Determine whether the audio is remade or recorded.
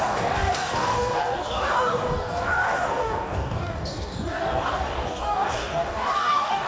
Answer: remade